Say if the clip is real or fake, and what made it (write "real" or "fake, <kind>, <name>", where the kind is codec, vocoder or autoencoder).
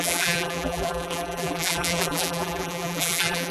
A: fake, vocoder, BigVGAN v2